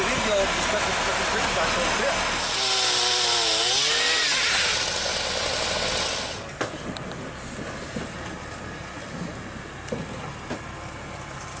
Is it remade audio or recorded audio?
recorded